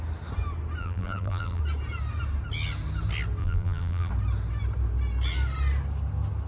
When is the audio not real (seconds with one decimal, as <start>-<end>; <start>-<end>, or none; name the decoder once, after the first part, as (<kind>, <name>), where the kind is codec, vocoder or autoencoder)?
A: 0.8-1.6 (vocoder, BigVGAN v2); 3.4-4.1